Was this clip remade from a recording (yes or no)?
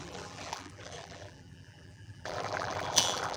yes